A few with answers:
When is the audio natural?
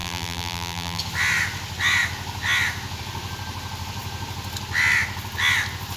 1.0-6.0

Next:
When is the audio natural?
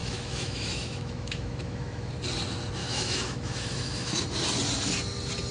2.1-2.8; 4.2-5.5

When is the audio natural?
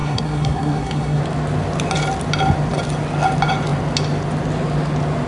1.2-5.3